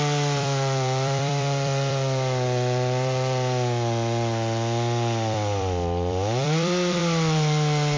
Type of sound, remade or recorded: remade